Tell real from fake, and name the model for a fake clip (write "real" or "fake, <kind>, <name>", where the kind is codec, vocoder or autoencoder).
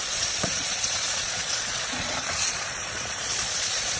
fake, vocoder, Vocos